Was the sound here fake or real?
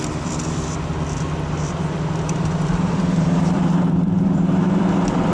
fake